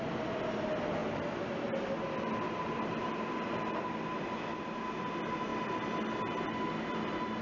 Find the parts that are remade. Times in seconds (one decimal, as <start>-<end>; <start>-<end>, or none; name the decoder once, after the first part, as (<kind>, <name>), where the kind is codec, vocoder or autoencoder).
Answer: none